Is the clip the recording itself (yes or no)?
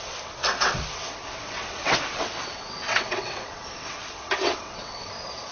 no